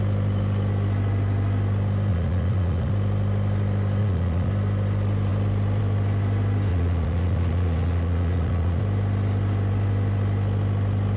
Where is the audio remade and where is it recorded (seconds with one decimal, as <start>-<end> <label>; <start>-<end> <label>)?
0.0-2.1 recorded; 2.1-2.9 remade; 2.9-4.0 recorded; 4.0-4.5 remade; 4.5-6.7 recorded; 6.7-8.8 remade; 8.8-11.2 recorded